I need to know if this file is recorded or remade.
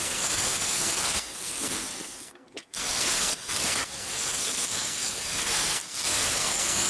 remade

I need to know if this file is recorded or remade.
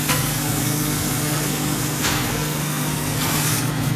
remade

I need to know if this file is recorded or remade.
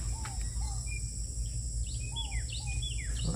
recorded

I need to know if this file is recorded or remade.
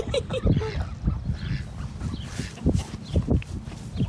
recorded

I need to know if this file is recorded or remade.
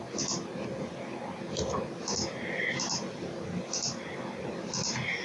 recorded